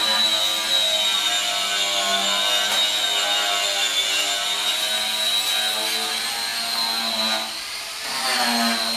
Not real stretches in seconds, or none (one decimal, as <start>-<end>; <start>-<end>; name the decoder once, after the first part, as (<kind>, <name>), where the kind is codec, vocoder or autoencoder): none